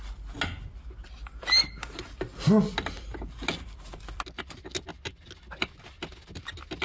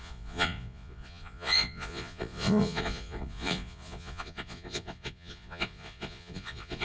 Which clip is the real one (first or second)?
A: first